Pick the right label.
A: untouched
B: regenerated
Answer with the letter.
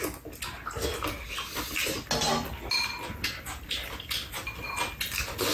A